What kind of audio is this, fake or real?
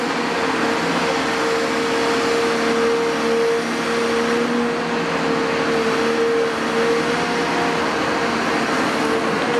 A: real